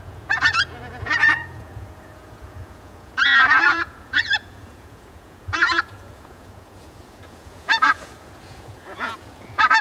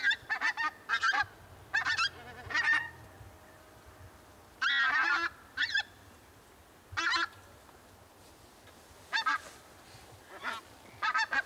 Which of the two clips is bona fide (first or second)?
second